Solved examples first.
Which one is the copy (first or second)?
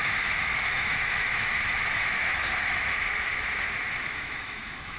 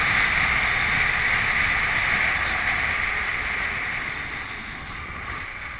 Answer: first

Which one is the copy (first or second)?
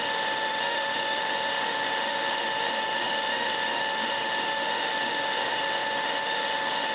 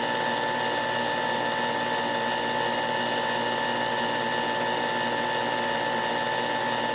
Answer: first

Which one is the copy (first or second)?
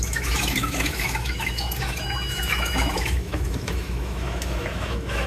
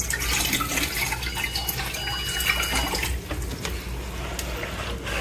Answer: first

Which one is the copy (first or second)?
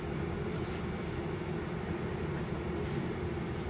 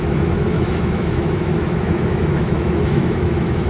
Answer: second